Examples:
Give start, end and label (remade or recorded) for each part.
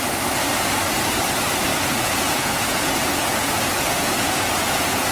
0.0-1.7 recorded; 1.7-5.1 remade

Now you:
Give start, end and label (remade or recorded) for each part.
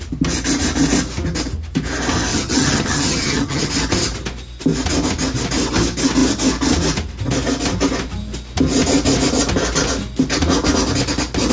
0.0-2.3 recorded; 2.3-3.7 remade; 3.7-11.5 recorded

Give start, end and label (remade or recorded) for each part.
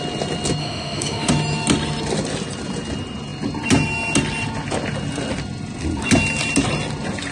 0.0-0.6 recorded; 0.6-1.3 remade; 1.3-7.3 recorded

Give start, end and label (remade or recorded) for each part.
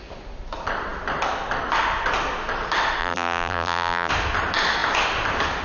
0.0-3.0 recorded; 3.0-4.1 remade; 4.1-5.6 recorded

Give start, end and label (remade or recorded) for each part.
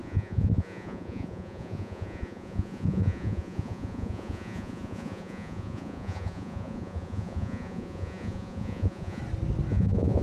0.0-9.2 remade; 9.2-9.7 recorded; 9.7-10.2 remade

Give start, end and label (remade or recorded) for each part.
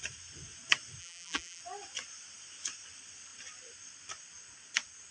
0.0-1.0 recorded; 1.0-1.6 remade; 1.6-5.1 recorded